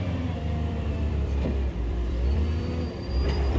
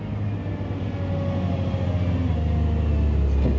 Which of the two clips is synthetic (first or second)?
first